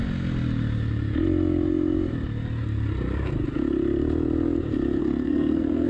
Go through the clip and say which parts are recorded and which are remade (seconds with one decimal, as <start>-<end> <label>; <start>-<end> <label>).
0.0-5.0 recorded; 5.0-5.9 remade